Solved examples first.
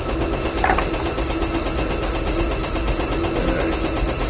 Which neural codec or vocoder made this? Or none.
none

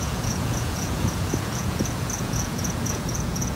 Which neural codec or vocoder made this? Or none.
vocoder, Vocos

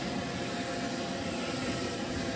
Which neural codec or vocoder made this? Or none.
none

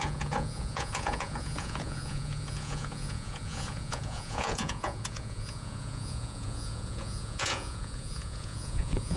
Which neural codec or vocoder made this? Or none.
vocoder, Vocos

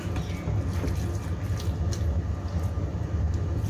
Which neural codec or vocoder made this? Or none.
none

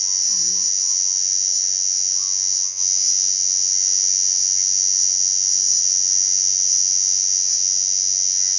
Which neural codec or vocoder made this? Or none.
vocoder, Vocos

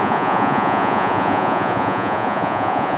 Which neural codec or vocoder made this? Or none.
vocoder, Vocos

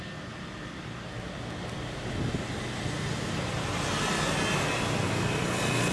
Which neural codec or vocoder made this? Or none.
none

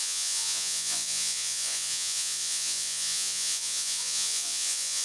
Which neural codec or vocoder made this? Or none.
vocoder, Vocos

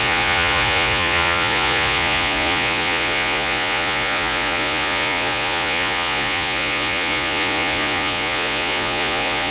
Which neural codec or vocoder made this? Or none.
vocoder, Vocos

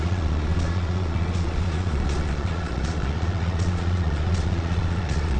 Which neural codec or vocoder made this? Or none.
vocoder, Vocos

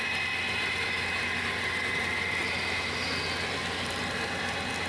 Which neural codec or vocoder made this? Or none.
none